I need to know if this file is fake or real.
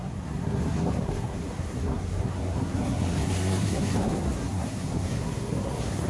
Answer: fake